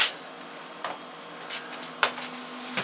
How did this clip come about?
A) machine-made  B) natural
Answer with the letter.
B